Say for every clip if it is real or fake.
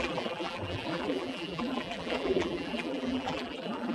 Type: fake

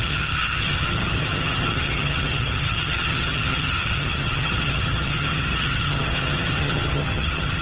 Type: fake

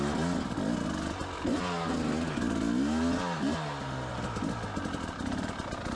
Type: real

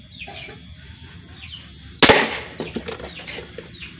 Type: real